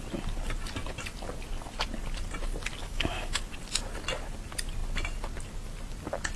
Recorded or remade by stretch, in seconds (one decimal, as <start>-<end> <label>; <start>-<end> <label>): 0.0-2.8 recorded; 2.8-3.4 remade; 3.4-6.4 recorded